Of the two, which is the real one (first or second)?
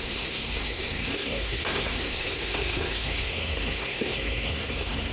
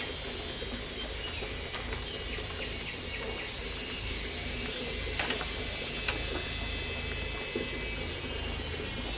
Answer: second